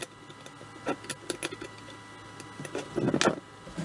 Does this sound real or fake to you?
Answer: real